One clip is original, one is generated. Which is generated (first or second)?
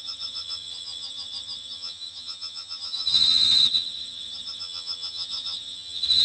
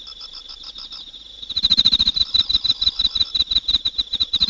first